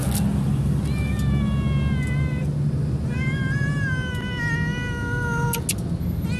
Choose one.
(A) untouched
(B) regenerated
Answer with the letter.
A